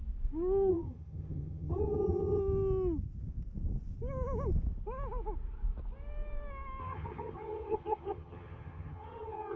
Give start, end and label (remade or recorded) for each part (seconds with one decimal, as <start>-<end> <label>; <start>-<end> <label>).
0.0-0.7 recorded; 0.7-2.4 remade; 2.4-6.8 recorded; 6.8-9.6 remade